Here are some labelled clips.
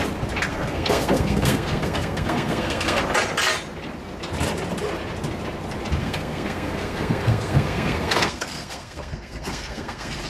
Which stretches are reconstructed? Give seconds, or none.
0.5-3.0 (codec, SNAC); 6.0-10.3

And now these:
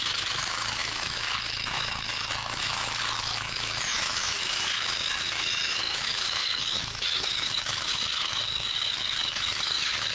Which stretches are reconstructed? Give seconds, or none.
0.0-10.1 (autoencoder, DAC-VAE)